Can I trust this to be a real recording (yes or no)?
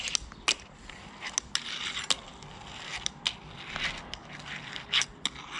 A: yes